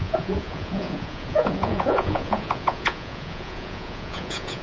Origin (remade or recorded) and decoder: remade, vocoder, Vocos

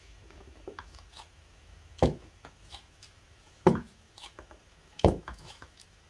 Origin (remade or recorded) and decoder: remade, autoencoder, DAC-VAE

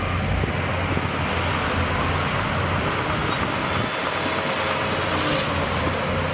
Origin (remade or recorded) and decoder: recorded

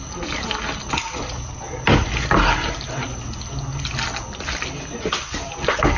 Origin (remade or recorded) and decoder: recorded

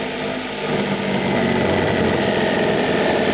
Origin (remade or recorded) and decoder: recorded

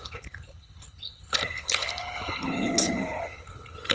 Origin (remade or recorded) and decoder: remade, codec, HILCodec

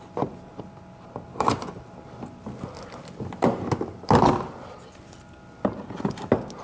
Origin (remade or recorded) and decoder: recorded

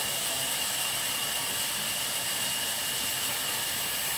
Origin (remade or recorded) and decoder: remade, vocoder, BigVGAN v2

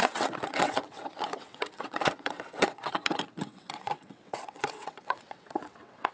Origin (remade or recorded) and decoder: remade, vocoder, WaveNeXt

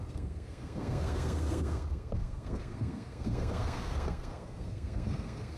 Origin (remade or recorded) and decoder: remade, codec, SNAC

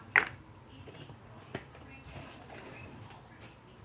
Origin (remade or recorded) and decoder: recorded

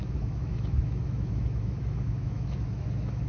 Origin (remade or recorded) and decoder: remade, autoencoder, DAC-VAE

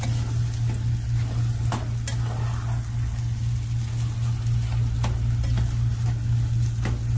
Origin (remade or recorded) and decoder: recorded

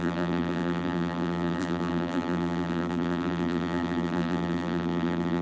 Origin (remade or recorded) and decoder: remade, vocoder, BigVGAN v2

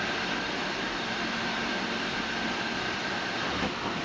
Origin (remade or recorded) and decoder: remade, vocoder, BigVGAN v2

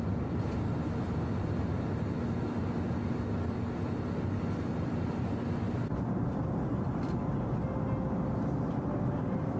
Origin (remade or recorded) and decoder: recorded